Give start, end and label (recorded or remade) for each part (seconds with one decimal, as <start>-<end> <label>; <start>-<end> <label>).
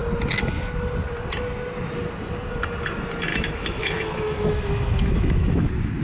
0.0-3.3 recorded; 3.3-5.6 remade; 5.6-6.0 recorded